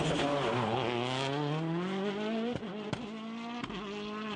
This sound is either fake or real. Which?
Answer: real